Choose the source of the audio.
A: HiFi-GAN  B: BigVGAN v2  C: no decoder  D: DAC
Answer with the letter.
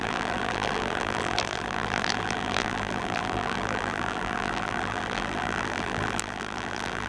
B